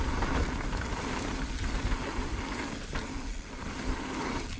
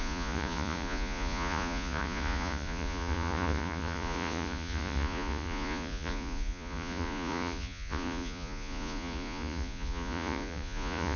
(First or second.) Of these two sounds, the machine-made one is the second